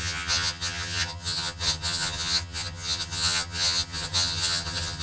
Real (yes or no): no